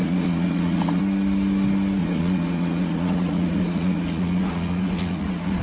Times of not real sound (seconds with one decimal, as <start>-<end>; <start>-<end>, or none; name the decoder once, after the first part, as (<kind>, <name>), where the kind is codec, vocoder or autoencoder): 0.0-1.0 (vocoder, Vocos); 2.0-5.6